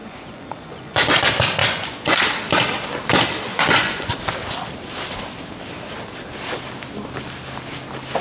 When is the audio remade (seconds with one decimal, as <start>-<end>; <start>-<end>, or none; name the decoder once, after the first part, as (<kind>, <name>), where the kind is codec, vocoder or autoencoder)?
0.0-1.2 (vocoder, Vocos); 1.6-2.2; 3.5-4.1